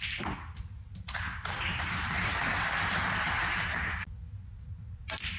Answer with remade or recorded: recorded